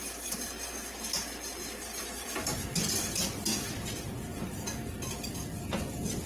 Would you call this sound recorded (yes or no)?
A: yes